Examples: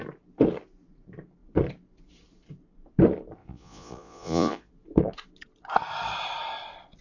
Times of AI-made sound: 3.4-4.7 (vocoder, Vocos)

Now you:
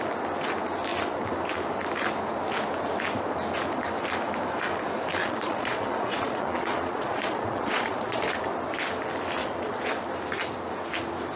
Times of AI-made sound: 5.2-8.2 (vocoder, Vocos); 9.4-9.9

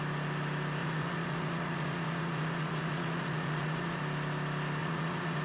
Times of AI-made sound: 0.8-4.0 (vocoder, Vocos); 4.8-5.4

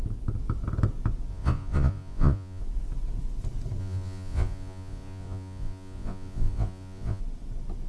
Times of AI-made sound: 1.3-2.6 (vocoder, Vocos); 3.8-7.2